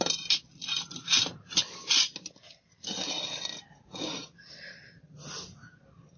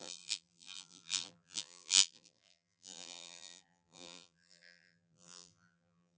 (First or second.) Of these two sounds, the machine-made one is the second